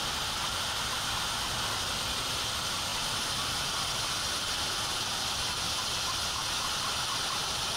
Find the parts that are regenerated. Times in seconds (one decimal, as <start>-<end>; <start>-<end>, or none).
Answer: none

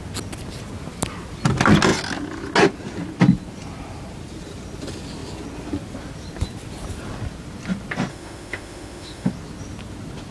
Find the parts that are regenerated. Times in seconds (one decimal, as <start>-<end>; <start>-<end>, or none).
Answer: 8.1-9.3

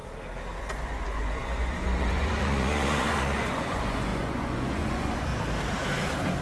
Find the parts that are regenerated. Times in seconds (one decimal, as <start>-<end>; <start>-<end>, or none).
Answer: 0.6-5.3

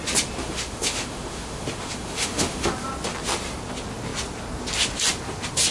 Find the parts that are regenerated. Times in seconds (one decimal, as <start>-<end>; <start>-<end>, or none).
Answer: 0.4-2.7

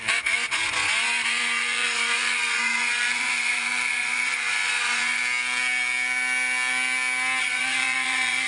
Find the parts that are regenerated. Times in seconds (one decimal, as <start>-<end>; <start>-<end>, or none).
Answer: 0.0-5.2; 7.4-8.5

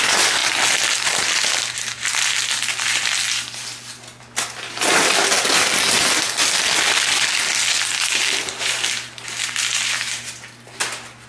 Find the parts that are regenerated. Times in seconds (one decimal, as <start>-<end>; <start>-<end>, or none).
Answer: none

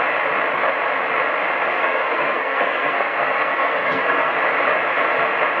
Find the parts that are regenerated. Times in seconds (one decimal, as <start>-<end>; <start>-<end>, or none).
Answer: 1.7-4.3